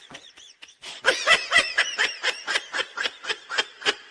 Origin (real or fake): fake